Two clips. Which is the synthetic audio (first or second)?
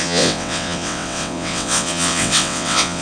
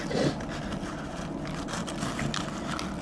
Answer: first